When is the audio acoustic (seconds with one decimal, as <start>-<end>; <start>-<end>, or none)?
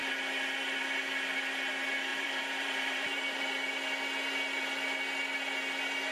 0.0-2.1; 3.4-6.1